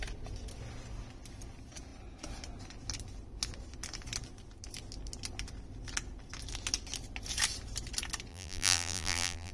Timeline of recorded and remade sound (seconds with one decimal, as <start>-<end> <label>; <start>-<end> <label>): 0.0-8.3 recorded; 8.3-9.5 remade